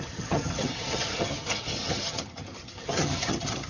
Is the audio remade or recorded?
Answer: remade